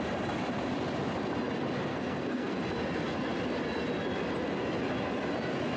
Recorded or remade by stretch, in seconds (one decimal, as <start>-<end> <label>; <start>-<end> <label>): 0.0-1.9 recorded; 1.9-2.6 remade; 2.6-5.8 recorded